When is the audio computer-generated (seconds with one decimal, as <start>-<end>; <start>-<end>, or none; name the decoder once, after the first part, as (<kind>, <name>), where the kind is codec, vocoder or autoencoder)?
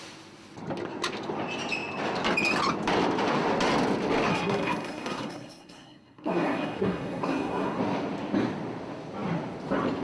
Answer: 4.3-7.8 (codec, SNAC)